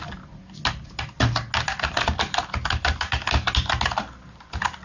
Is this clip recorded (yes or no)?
yes